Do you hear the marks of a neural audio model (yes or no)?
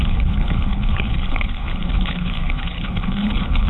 yes